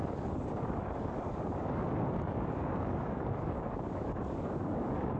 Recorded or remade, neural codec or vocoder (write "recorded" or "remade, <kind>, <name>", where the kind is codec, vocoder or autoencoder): remade, codec, DAC